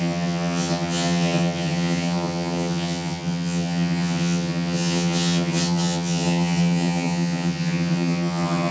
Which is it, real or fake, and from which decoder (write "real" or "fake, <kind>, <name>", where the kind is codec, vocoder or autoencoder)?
fake, vocoder, HiFi-GAN